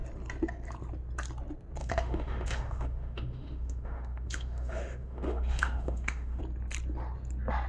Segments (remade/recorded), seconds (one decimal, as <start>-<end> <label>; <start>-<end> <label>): 0.0-1.8 recorded; 1.8-6.4 remade; 6.4-7.7 recorded